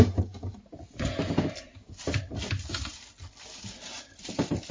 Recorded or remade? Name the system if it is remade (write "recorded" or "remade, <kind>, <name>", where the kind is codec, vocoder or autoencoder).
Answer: recorded